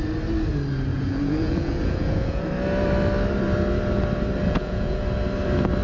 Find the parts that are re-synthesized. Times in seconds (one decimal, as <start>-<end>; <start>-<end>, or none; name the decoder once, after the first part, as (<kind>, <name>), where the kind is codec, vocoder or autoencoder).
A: 0.9-2.5 (vocoder, Vocos); 4.4-5.0